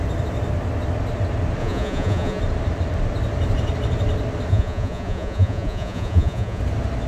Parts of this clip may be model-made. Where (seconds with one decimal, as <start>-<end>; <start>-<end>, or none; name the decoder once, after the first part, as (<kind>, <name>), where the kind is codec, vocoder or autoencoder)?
1.6-2.4 (vocoder, Vocos); 4.5-6.6